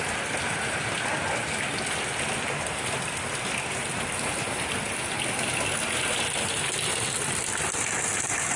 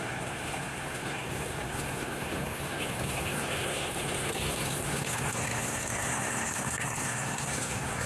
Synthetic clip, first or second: second